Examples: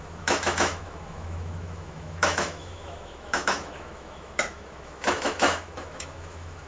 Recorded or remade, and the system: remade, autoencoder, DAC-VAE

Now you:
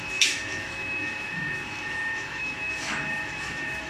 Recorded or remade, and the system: remade, autoencoder, DAC-VAE